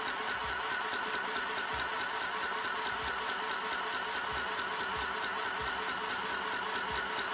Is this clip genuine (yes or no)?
yes